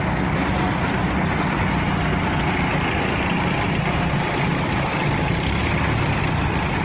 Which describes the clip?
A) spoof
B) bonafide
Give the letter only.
B